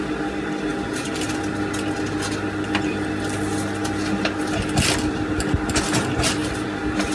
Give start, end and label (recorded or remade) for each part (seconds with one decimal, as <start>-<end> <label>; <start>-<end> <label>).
0.0-7.1 recorded